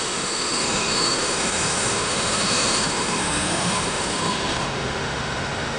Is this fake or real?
fake